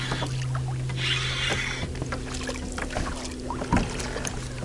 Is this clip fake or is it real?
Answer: real